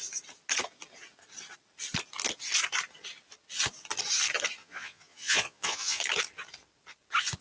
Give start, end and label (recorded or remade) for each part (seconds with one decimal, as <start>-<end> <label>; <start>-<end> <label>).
0.0-4.6 recorded; 4.6-6.0 remade; 6.0-7.4 recorded